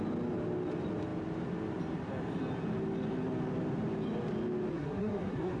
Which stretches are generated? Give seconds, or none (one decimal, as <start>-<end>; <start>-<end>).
4.7-5.6